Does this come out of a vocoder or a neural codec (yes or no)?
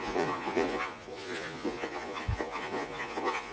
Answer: yes